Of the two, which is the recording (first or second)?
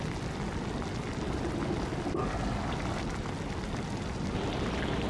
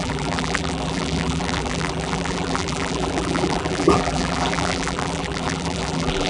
first